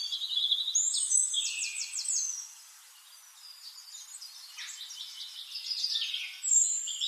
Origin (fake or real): real